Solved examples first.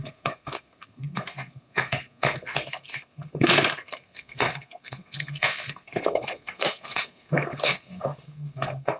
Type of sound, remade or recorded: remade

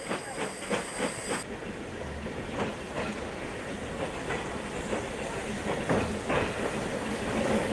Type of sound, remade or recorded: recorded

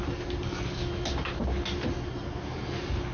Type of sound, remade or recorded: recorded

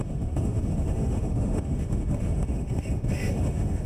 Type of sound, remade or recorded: remade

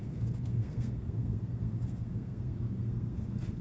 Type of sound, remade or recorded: remade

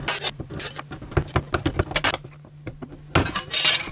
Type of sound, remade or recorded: recorded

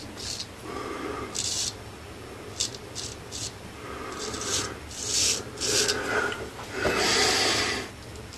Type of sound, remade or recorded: recorded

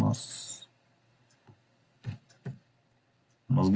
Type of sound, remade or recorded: recorded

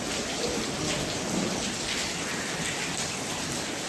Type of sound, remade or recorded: remade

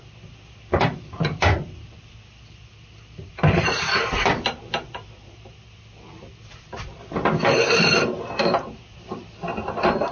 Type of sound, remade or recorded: remade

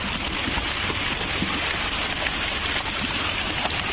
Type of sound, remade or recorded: recorded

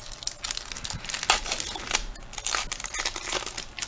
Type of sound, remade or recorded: recorded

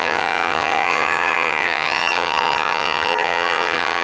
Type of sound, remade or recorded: remade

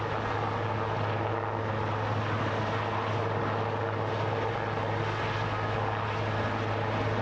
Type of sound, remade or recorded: recorded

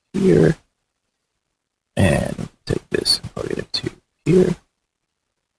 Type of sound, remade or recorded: recorded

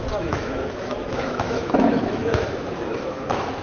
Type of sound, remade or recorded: remade